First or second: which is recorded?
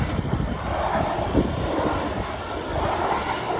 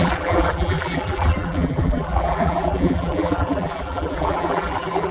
first